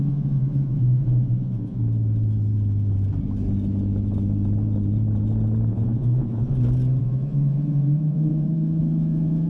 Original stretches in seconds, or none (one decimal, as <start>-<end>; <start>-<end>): 1.8-5.7; 6.5-7.0